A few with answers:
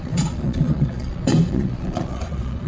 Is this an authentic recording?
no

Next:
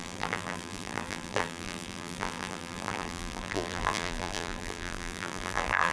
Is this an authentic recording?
no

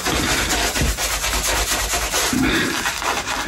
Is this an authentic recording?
yes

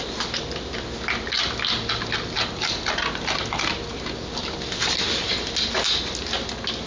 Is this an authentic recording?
yes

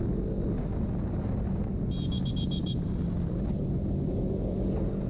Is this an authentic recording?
yes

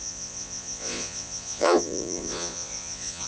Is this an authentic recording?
no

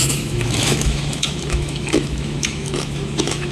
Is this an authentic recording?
no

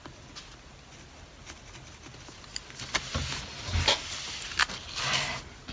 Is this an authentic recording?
yes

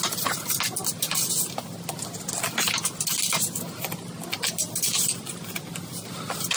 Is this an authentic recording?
yes